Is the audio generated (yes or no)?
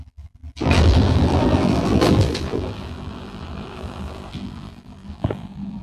yes